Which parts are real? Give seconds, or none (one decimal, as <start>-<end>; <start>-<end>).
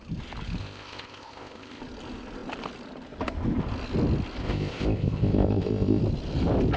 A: 0.0-0.6; 1.8-4.4; 6.0-6.8